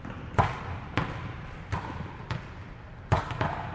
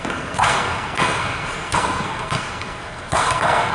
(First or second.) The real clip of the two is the first